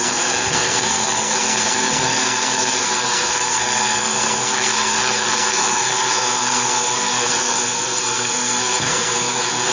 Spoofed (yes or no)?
yes